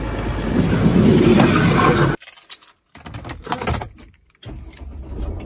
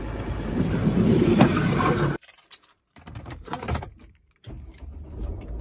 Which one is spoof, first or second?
second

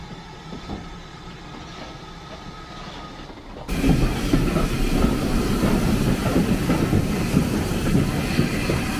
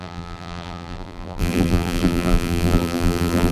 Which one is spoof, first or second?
second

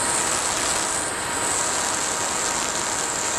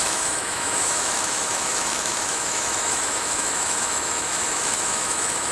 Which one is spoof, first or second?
second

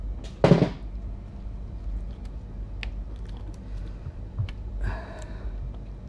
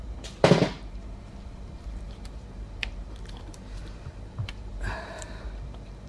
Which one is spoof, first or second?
second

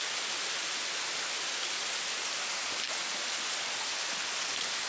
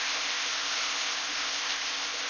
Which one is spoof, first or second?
second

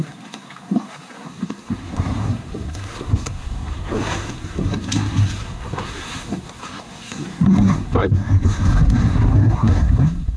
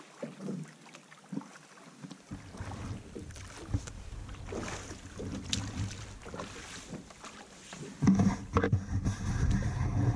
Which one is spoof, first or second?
first